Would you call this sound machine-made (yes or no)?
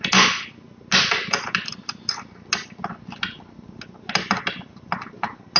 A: no